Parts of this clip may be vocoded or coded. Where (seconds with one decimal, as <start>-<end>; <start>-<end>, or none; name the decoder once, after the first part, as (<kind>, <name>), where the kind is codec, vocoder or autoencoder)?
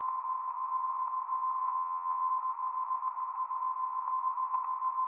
1.6-2.3 (vocoder, Vocos)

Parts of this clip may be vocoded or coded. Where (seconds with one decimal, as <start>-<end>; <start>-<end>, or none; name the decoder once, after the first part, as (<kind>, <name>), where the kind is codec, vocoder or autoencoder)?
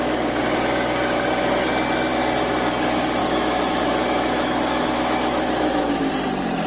3.2-6.1 (autoencoder, DAC-VAE)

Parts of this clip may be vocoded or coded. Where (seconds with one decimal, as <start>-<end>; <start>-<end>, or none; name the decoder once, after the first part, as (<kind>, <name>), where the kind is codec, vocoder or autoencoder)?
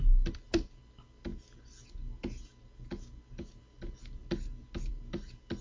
none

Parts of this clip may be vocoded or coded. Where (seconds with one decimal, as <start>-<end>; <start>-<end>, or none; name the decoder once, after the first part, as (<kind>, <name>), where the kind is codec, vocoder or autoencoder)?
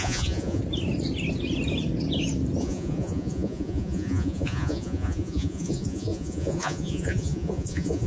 0.0-0.6 (vocoder, Vocos); 2.6-8.1